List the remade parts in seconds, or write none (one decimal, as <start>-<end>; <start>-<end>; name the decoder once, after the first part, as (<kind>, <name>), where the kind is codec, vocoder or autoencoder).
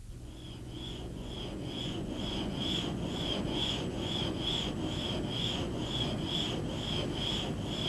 0.0-4.7 (vocoder, Vocos); 5.3-6.3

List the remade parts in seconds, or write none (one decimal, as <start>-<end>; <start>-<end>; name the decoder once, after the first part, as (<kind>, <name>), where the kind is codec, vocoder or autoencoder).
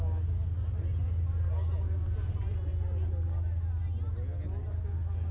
none